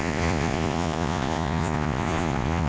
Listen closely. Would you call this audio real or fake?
fake